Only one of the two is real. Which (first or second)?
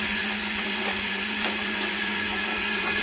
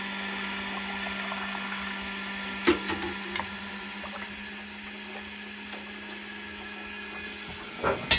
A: second